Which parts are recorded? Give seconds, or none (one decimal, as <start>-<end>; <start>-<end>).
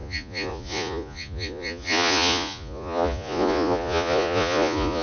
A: none